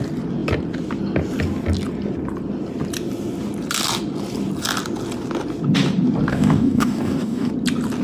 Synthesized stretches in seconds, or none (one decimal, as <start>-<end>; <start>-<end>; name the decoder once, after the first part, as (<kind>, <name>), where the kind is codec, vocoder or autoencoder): 6.3-7.5 (codec, DAC)